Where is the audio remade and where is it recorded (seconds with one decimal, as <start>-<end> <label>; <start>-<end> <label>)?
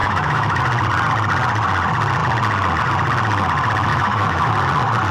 0.0-0.6 remade; 0.6-3.9 recorded; 3.9-4.5 remade; 4.5-5.1 recorded